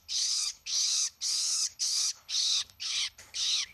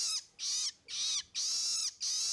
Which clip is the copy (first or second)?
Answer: first